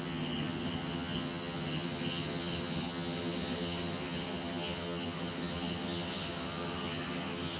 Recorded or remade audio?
remade